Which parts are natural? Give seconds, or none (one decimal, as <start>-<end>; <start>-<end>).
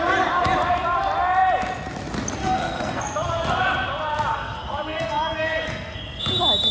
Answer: 0.0-2.4; 3.0-4.3; 6.2-6.7